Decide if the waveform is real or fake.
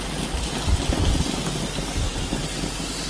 real